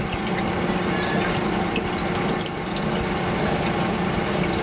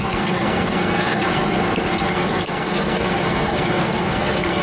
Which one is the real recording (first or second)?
first